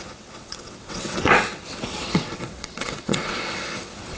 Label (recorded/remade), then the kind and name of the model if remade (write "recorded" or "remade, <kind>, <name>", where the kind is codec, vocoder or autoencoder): remade, vocoder, WaveNeXt